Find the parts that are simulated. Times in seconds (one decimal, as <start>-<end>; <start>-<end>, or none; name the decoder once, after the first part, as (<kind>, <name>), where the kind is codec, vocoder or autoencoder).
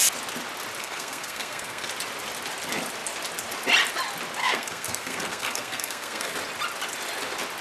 0.8-1.9 (codec, SNAC); 4.4-6.3